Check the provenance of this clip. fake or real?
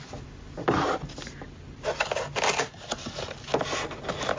real